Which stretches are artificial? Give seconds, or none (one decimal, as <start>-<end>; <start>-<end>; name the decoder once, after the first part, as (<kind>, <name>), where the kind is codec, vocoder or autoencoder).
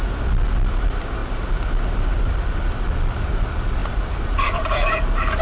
1.2-2.5 (vocoder, BigVGAN v2); 3.8-5.4